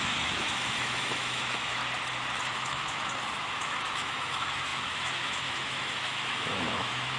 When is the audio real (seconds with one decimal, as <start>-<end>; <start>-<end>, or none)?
1.8-2.4